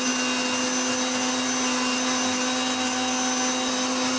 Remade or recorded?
recorded